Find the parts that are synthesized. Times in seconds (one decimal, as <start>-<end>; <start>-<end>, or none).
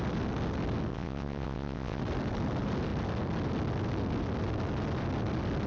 0.9-2.0